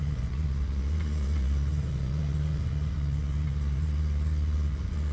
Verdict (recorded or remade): remade